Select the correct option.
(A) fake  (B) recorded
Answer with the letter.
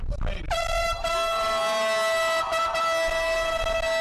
B